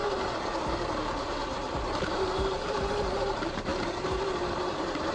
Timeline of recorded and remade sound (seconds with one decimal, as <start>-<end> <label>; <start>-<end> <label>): 0.0-1.4 remade; 1.4-2.1 recorded; 2.1-3.7 remade; 3.7-4.3 recorded; 4.3-5.1 remade